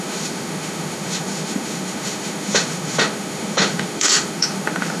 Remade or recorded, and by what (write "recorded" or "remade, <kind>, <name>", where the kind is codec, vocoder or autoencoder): remade, autoencoder, DAC-VAE